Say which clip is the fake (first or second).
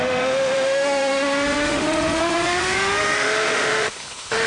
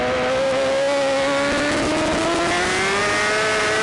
first